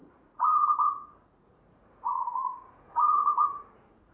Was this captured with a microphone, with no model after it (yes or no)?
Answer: no